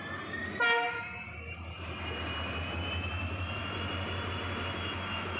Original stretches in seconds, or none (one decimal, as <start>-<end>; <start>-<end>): 0.0-5.4